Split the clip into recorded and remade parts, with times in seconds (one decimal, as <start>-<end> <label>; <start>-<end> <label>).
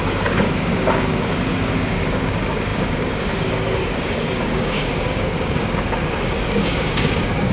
0.0-7.5 remade